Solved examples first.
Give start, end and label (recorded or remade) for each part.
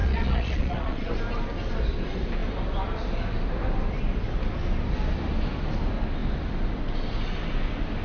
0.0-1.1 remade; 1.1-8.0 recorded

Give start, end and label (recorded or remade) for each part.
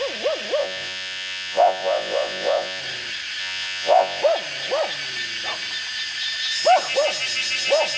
0.0-0.6 recorded; 0.6-2.8 remade; 2.8-3.4 recorded; 3.4-4.2 remade; 4.2-8.0 recorded